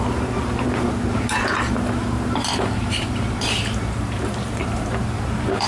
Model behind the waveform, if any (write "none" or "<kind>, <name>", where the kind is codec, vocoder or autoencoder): vocoder, BigVGAN v2